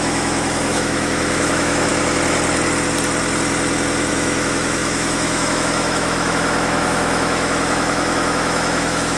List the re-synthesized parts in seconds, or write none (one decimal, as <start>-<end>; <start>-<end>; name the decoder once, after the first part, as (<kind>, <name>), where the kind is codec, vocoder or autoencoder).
0.0-1.9 (autoencoder, DAC-VAE); 4.1-9.2